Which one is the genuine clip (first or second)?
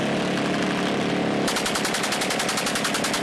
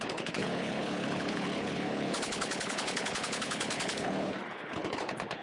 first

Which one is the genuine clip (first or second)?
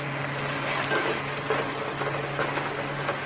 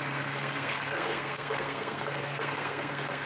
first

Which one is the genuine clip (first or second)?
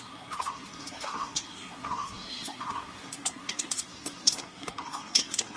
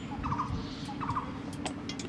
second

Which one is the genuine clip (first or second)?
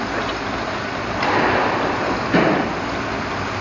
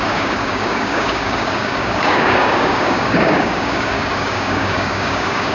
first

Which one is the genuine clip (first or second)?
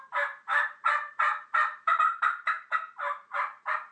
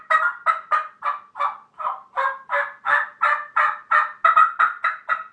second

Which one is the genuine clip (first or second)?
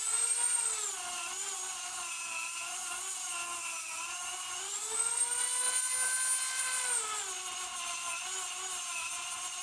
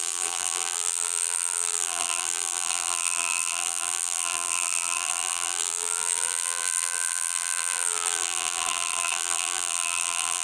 first